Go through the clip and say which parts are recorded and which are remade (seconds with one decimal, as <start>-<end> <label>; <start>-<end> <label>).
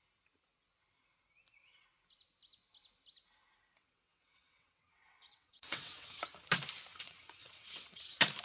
0.0-3.8 recorded; 3.8-6.2 remade; 6.2-6.9 recorded; 6.9-8.0 remade; 8.0-8.4 recorded